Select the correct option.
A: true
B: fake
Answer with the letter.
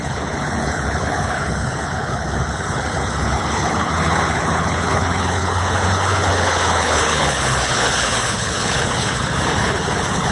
B